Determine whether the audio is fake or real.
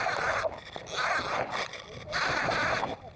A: real